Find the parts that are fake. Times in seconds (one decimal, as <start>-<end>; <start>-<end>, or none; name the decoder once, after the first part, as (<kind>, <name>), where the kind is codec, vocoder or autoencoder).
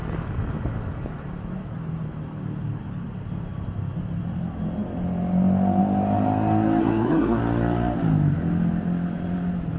6.8-7.4 (codec, SNAC)